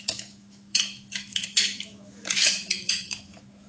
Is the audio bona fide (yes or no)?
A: no